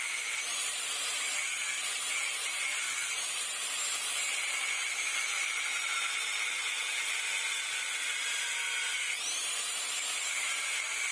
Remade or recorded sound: recorded